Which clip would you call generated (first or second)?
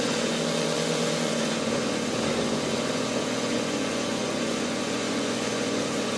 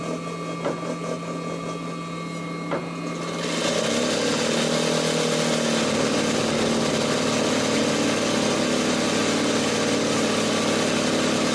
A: first